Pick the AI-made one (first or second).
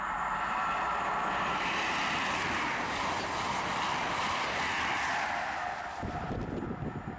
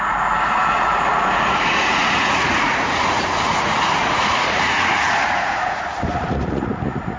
second